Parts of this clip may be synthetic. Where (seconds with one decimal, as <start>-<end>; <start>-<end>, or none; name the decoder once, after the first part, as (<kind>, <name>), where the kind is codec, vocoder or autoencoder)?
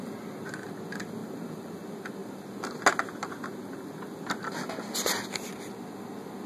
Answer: 1.2-1.8 (vocoder, BigVGAN v2)